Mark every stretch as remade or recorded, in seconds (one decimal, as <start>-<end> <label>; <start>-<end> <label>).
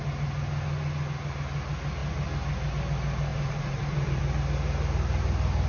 0.0-3.3 recorded; 3.3-4.2 remade; 4.2-5.7 recorded